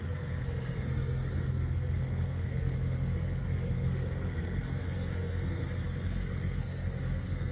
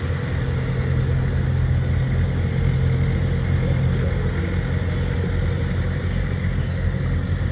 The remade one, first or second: first